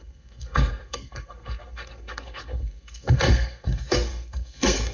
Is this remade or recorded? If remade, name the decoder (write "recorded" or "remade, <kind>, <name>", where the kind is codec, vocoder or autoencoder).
remade, codec, SNAC